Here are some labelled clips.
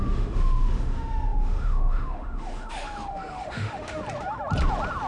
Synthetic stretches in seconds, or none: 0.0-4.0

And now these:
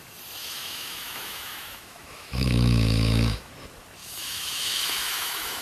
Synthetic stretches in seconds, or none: 0.4-3.5; 4.0-5.6

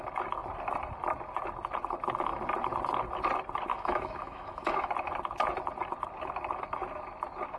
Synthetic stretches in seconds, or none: 3.7-4.9

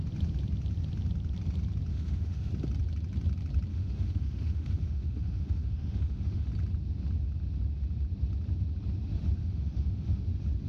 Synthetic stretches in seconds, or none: 1.9-2.5; 3.7-6.5; 9.4-10.2

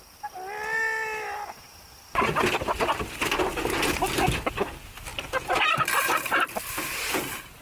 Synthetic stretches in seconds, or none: none